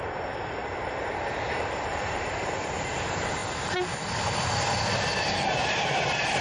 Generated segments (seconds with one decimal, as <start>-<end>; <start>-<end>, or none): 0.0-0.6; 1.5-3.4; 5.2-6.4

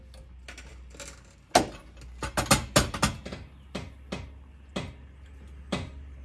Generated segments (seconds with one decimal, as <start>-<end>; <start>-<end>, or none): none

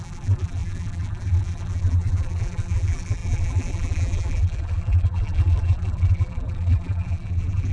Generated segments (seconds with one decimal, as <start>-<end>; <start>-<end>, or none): 0.0-7.7

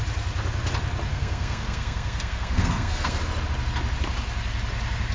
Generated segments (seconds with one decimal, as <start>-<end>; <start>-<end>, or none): 1.1-3.2

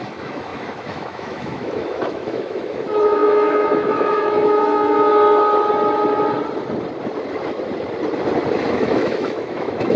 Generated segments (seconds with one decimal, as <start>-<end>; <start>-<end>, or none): 0.0-5.1; 8.7-10.0

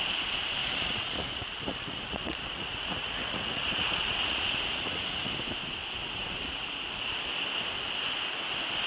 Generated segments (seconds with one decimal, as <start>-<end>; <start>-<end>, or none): 0.6-5.2; 6.0-7.2